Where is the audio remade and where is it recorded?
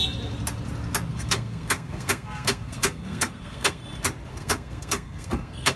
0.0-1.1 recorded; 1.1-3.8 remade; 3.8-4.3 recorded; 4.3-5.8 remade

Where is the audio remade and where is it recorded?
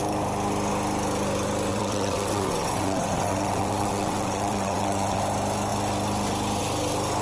0.0-1.7 recorded; 1.7-5.2 remade; 5.2-7.2 recorded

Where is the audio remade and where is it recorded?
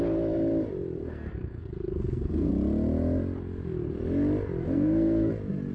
0.0-1.0 recorded; 1.0-2.5 remade; 2.5-4.6 recorded; 4.6-5.3 remade; 5.3-5.7 recorded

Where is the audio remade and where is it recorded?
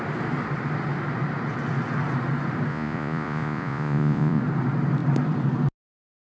0.0-2.7 recorded; 2.7-4.4 remade; 4.4-6.4 recorded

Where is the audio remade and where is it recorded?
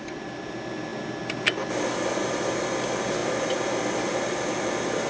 0.0-5.1 recorded